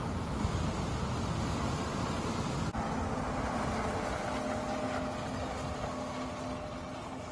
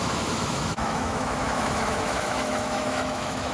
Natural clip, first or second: first